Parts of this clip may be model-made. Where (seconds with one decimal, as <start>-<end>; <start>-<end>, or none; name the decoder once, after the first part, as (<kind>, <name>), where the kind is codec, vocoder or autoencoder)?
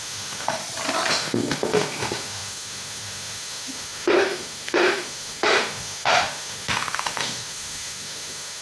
0.0-0.6 (autoencoder, DAC-VAE); 1.1-8.6